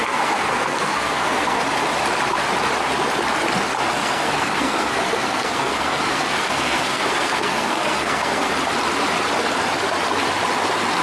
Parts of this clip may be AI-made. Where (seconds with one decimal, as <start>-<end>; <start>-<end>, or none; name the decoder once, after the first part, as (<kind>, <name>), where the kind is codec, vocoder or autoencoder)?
0.0-1.6 (codec, SNAC); 4.0-8.5